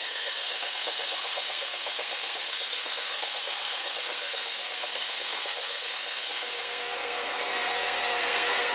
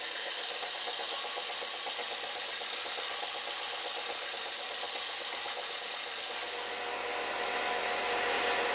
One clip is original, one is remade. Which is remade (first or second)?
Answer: first